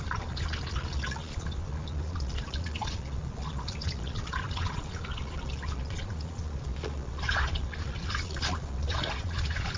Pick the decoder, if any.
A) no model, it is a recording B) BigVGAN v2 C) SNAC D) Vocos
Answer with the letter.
D